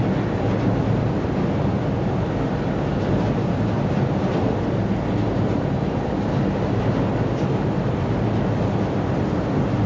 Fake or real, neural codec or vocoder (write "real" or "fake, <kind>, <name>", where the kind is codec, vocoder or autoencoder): real